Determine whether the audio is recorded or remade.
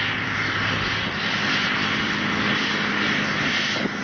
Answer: recorded